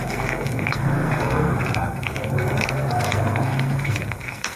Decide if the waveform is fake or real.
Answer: fake